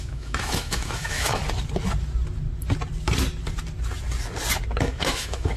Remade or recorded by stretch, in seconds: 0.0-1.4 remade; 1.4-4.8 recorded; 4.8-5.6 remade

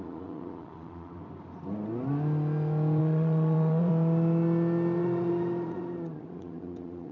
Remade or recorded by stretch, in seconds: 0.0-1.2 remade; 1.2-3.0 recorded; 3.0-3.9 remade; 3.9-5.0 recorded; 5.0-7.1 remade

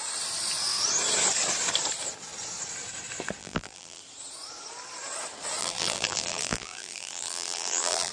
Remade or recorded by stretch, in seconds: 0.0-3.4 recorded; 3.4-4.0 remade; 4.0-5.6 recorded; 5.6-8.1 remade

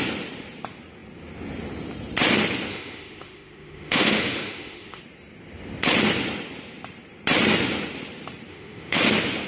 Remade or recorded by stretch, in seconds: 0.0-2.7 recorded; 2.7-5.0 remade; 5.0-8.5 recorded; 8.5-9.0 remade; 9.0-9.5 recorded

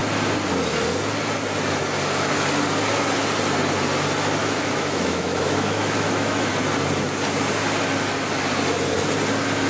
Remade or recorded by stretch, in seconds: 0.0-4.4 recorded; 4.4-6.5 remade; 6.5-9.7 recorded